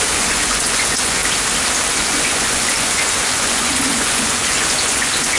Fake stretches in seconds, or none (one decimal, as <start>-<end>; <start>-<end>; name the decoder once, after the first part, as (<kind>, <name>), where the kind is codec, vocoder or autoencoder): 0.0-1.2 (vocoder, Vocos); 1.9-5.4